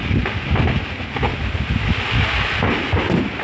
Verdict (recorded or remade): recorded